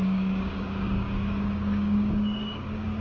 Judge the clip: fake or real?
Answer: fake